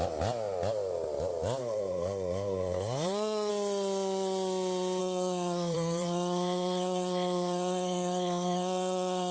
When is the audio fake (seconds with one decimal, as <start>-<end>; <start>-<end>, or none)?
1.6-3.5; 5.0-9.3